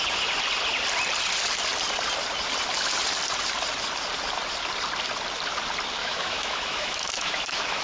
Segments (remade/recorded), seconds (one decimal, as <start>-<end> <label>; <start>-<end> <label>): 0.0-6.0 recorded; 6.0-7.8 remade